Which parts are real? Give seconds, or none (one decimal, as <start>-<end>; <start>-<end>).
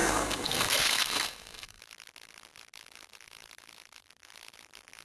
1.8-5.0